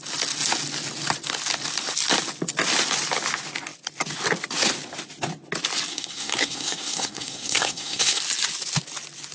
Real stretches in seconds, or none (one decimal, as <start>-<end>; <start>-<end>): 0.0-5.9; 8.2-9.3